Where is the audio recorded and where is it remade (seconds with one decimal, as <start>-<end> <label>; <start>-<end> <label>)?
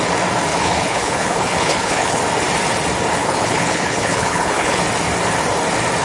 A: 0.0-0.5 recorded; 0.5-2.2 remade; 2.2-3.2 recorded; 3.2-4.8 remade; 4.8-6.0 recorded